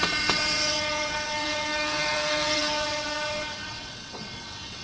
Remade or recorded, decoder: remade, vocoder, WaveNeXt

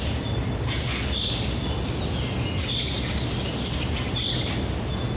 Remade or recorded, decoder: recorded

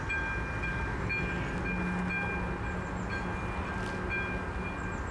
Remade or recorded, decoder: recorded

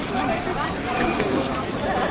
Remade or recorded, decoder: recorded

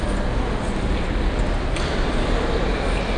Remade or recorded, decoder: recorded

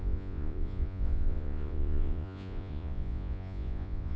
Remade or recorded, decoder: remade, vocoder, Vocos